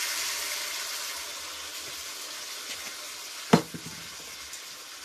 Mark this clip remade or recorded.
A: recorded